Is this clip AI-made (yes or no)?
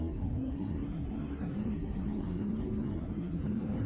yes